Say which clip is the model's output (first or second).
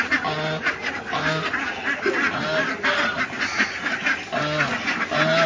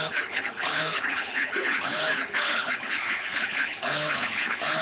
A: second